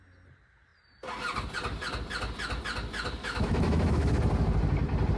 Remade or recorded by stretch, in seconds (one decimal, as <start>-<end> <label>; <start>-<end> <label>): 0.0-3.2 recorded; 3.2-4.2 remade; 4.2-5.2 recorded